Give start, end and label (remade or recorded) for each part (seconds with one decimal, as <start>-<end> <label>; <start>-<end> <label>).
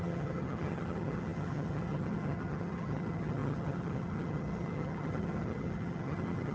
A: 0.0-6.5 remade